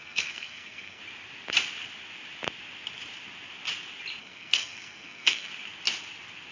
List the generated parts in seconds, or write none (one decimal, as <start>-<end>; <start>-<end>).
0.0-1.0; 4.2-5.5